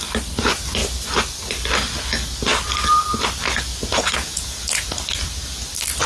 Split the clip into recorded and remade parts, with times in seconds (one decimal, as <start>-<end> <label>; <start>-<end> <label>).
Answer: 0.0-3.7 recorded; 3.7-4.9 remade; 4.9-6.1 recorded

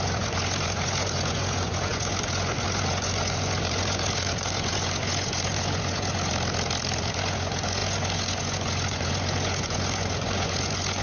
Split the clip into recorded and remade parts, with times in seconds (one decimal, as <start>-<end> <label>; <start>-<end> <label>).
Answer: 0.0-6.3 remade; 6.3-7.1 recorded; 7.1-11.0 remade

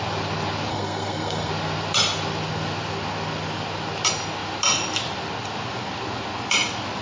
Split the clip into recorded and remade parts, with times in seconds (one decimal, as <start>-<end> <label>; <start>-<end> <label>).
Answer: 0.0-0.7 recorded; 0.7-1.5 remade; 1.5-7.0 recorded